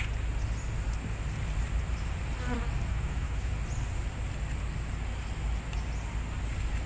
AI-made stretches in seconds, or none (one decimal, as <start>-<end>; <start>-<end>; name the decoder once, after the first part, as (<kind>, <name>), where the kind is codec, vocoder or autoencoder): 2.9-3.5 (autoencoder, DAC-VAE)